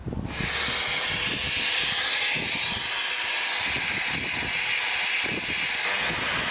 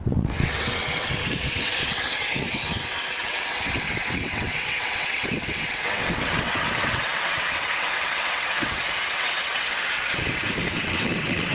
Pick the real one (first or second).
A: first